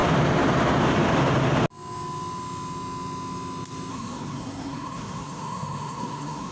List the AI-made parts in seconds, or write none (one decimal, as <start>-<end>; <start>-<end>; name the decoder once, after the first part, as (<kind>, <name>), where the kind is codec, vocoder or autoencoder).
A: 3.9-6.5 (codec, SNAC)